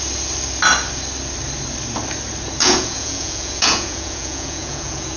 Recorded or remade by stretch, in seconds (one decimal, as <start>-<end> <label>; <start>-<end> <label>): 0.0-2.6 recorded; 2.6-5.2 remade